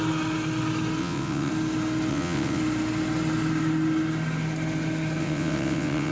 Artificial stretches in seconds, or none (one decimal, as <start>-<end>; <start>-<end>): 1.0-1.5; 2.1-2.6; 5.2-6.1